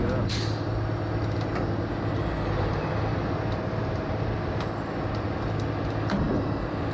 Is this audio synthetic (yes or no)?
no